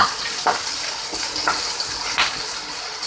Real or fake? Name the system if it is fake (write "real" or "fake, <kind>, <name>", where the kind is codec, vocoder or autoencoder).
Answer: real